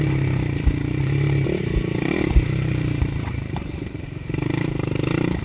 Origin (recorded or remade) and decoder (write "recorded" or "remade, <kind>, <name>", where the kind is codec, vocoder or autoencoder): remade, vocoder, BigVGAN v2